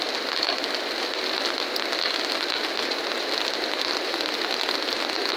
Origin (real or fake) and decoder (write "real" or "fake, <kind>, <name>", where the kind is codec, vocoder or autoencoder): real